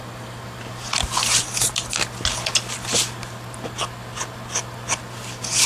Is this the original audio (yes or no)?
yes